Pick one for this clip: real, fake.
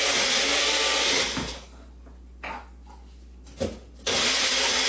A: real